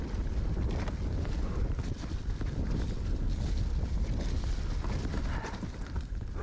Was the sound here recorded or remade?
recorded